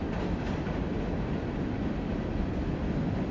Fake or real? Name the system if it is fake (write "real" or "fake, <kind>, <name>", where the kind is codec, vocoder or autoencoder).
real